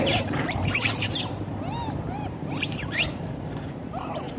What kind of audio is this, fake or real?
fake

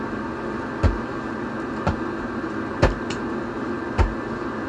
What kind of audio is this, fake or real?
real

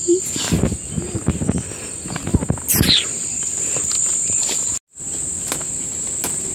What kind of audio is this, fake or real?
real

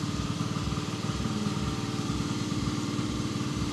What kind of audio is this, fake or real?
fake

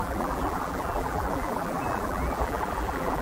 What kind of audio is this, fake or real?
fake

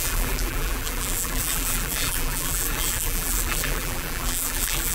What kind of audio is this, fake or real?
fake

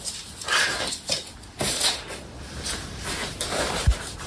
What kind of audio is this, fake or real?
real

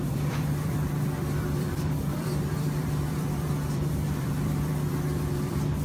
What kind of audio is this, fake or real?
fake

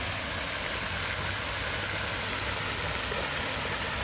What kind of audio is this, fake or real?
real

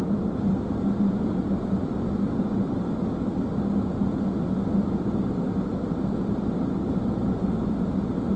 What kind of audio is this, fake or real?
fake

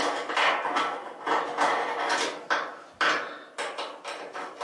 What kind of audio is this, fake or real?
real